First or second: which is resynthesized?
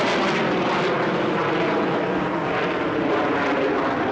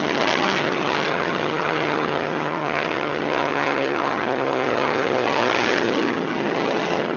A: second